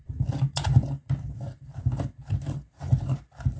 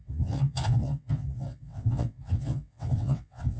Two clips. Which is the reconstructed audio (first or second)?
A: second